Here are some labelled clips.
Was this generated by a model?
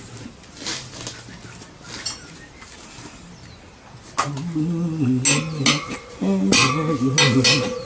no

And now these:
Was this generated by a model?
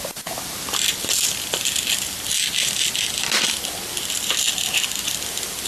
no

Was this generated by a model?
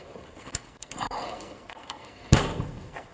yes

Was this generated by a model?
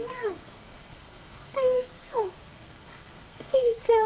yes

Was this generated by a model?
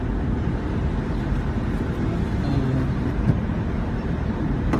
no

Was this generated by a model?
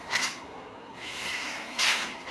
yes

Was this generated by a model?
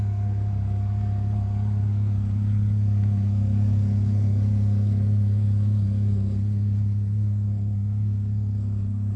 yes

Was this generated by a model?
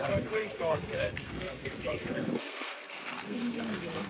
yes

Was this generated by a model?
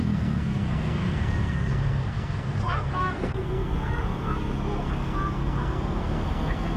yes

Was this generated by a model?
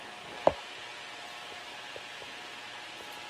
no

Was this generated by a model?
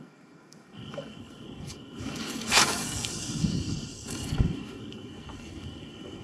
yes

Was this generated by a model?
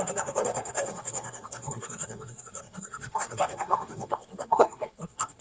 yes